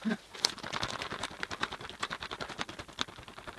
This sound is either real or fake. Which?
real